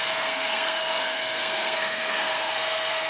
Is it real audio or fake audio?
fake